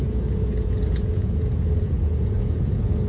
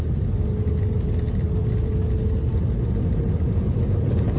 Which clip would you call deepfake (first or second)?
first